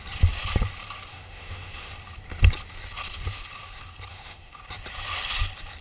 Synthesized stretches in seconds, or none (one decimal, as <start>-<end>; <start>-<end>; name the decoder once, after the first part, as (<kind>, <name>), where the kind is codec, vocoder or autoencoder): 1.1-1.9 (autoencoder, DAC-VAE); 4.1-4.6